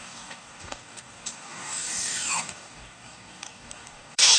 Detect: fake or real fake